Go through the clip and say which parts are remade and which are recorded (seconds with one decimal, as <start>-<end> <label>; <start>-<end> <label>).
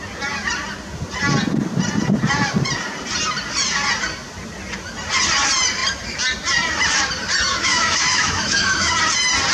0.0-7.5 recorded; 7.5-8.9 remade; 8.9-9.5 recorded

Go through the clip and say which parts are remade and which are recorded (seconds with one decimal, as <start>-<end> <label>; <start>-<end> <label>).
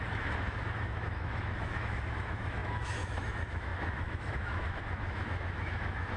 0.0-6.2 remade